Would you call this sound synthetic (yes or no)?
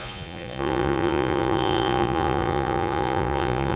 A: yes